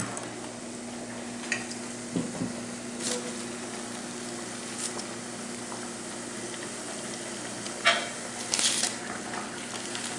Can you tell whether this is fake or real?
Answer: real